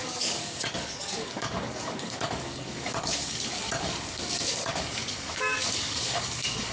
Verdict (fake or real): fake